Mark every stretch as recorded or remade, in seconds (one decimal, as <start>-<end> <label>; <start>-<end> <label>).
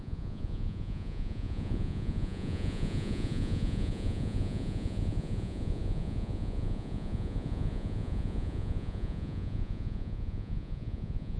0.0-11.4 remade